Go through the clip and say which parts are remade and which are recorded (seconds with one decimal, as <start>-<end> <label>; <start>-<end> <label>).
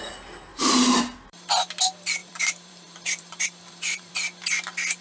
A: 0.0-0.5 recorded; 0.5-1.5 remade; 1.5-2.2 recorded; 2.2-4.1 remade; 4.1-5.0 recorded